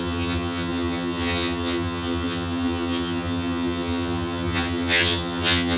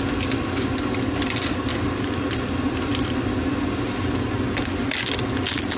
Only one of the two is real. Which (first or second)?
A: second